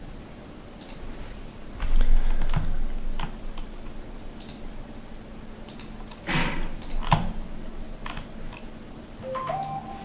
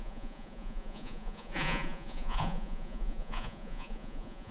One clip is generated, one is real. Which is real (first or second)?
first